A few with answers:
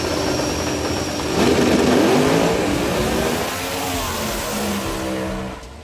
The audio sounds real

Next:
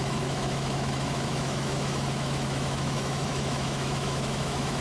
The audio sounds fake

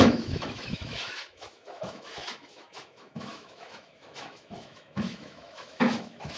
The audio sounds fake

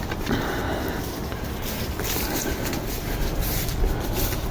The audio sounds real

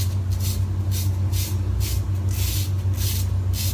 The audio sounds real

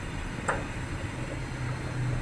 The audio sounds real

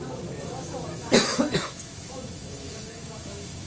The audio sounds fake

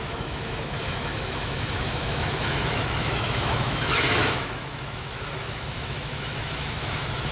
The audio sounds fake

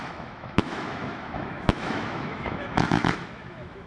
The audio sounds fake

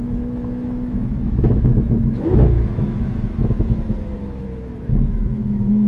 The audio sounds fake